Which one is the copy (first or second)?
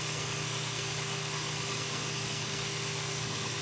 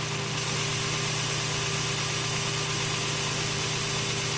first